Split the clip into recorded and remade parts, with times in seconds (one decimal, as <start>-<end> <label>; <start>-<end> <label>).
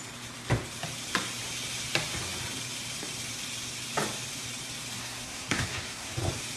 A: 0.0-5.0 recorded; 5.0-6.1 remade; 6.1-6.6 recorded